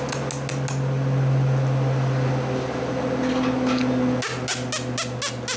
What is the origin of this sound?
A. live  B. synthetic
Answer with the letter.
A